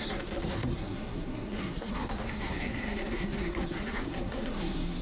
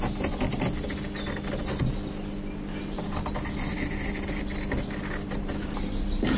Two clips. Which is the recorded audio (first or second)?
second